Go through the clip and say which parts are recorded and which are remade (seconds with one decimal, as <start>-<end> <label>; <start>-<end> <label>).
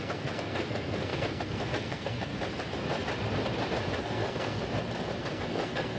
0.0-2.3 remade; 2.3-4.0 recorded; 4.0-4.6 remade; 4.6-5.2 recorded; 5.2-6.0 remade